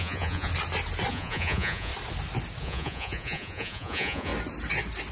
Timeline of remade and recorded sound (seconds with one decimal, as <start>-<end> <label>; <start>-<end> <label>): 0.0-0.5 remade; 0.5-1.1 recorded; 1.1-1.9 remade; 1.9-2.6 recorded; 2.6-4.3 remade; 4.3-5.1 recorded